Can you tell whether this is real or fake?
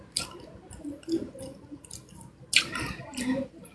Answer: real